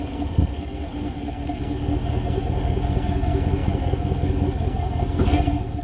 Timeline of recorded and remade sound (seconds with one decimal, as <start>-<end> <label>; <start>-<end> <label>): 0.0-5.8 remade